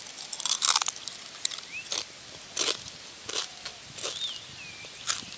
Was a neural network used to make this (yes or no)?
no